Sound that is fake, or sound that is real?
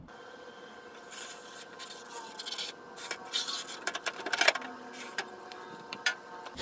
fake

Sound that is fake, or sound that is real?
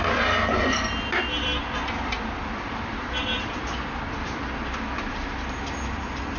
fake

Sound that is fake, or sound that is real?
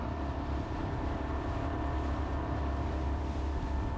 fake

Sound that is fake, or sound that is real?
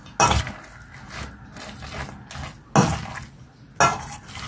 real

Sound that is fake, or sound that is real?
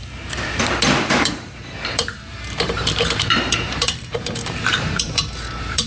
fake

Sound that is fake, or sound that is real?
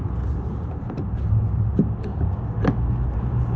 real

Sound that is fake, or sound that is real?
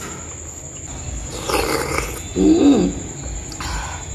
real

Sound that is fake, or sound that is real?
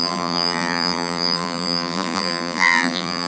fake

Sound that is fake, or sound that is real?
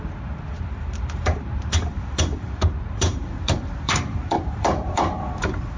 fake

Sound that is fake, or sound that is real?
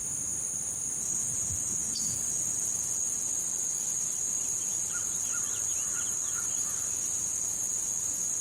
fake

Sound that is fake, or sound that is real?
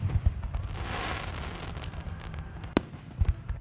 real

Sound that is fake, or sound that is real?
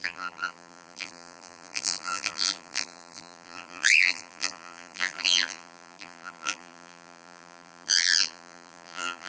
fake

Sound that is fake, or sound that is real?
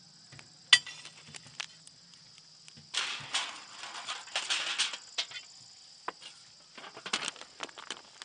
real